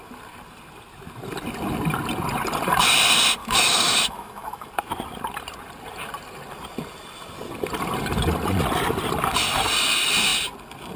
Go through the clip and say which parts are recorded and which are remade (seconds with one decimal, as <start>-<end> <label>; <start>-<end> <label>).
0.0-3.4 recorded; 3.4-4.7 remade; 4.7-11.0 recorded